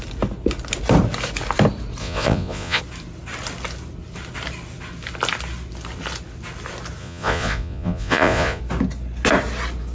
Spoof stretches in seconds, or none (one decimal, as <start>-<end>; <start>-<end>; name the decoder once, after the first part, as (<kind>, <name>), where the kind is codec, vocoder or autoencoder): 2.0-2.8 (vocoder, Vocos); 7.0-8.6